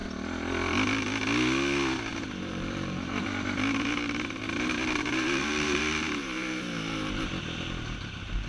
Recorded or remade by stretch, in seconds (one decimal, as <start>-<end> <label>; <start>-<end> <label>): 0.0-2.1 recorded; 2.1-5.8 remade; 5.8-6.2 recorded; 6.2-7.3 remade; 7.3-8.5 recorded